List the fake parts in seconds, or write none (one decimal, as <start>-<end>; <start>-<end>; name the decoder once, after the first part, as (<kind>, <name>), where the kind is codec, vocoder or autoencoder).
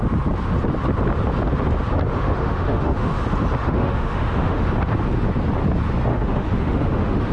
2.1-3.2 (autoencoder, DAC-VAE); 3.6-4.7; 6.1-7.3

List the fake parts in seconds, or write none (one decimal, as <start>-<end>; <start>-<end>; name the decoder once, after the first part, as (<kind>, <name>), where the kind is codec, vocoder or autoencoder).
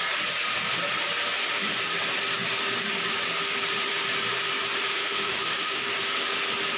4.9-5.9 (autoencoder, DAC-VAE)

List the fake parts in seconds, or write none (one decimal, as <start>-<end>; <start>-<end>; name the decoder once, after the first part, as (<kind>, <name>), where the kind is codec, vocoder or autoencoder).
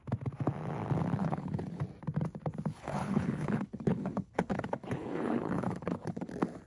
1.2-1.8 (codec, HILCodec); 2.7-6.3